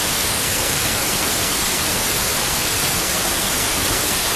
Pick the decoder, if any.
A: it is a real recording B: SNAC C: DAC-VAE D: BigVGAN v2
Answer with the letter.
B